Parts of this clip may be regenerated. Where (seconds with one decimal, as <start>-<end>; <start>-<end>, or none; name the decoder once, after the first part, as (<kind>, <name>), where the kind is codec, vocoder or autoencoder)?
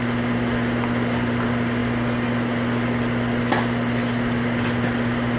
0.0-1.8 (vocoder, BigVGAN v2); 4.4-5.4